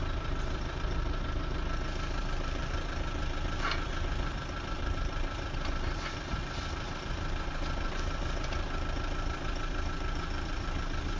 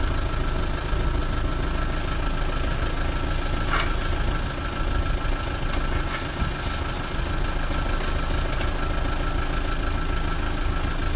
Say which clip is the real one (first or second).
second